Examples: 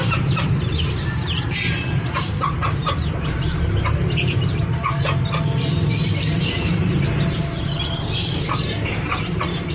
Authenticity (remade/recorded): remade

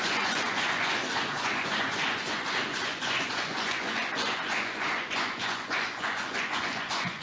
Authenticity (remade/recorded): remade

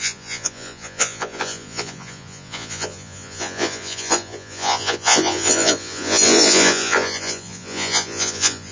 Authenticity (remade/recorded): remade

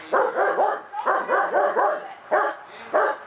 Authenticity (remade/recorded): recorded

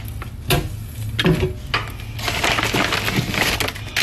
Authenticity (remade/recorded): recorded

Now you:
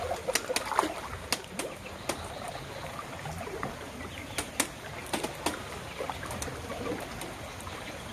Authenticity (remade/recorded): recorded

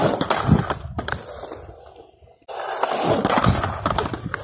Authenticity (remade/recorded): recorded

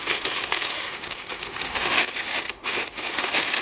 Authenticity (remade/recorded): remade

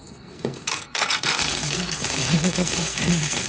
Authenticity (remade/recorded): remade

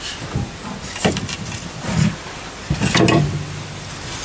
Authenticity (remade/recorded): recorded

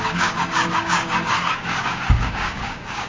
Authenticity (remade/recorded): remade